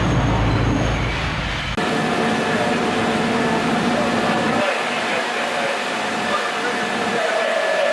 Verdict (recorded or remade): recorded